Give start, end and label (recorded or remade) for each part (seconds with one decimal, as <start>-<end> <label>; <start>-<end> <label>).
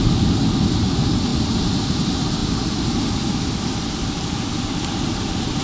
0.0-2.4 recorded; 2.4-5.6 remade